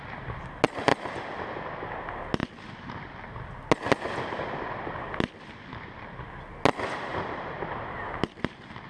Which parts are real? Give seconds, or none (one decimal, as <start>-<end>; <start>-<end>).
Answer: 0.0-8.9